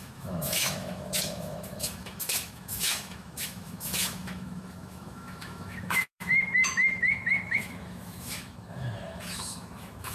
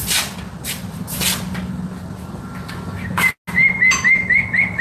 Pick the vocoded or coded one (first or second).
first